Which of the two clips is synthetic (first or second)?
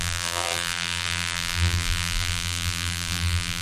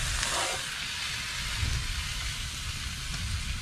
first